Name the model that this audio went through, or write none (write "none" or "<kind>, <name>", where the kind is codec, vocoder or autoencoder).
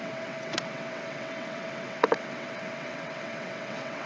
vocoder, WaveNeXt